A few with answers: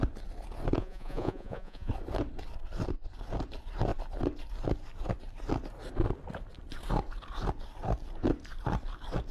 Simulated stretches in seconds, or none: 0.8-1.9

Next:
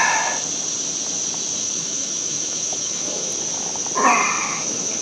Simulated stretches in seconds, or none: 1.6-3.3; 4.4-5.0

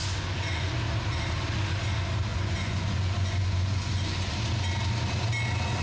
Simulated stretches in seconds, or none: 0.0-0.7; 2.3-4.3

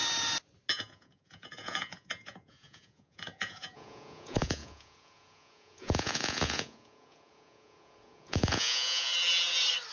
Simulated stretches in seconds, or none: 0.7-9.1